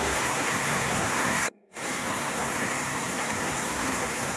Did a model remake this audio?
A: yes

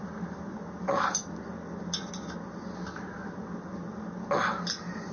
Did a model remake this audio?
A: no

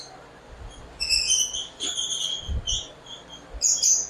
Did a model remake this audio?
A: no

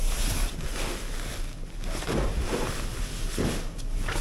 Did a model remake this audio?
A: no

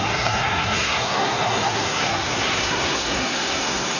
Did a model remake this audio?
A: yes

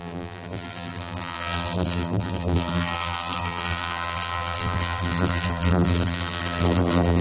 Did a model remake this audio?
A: yes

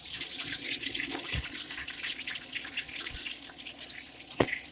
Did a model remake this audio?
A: yes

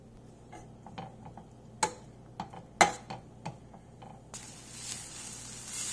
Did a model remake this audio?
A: no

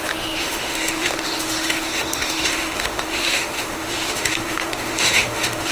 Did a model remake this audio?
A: yes